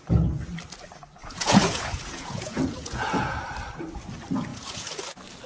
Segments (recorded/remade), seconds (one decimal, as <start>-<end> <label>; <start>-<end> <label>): 0.0-1.2 recorded; 1.2-3.4 remade; 3.4-4.5 recorded; 4.5-5.0 remade; 5.0-5.5 recorded